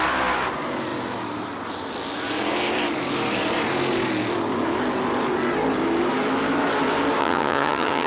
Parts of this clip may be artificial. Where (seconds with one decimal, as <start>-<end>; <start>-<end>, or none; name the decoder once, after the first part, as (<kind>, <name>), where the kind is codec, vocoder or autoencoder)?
7.2-8.1 (vocoder, HiFi-GAN)